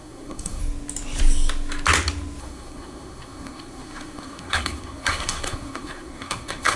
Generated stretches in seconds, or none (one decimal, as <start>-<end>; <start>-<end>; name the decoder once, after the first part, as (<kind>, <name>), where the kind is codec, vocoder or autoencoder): 0.0-0.6 (codec, SNAC); 2.4-6.8